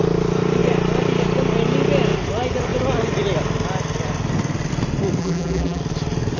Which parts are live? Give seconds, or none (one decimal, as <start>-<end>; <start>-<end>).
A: 0.0-5.2; 5.8-6.4